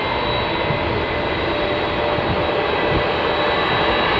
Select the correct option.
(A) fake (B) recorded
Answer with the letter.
B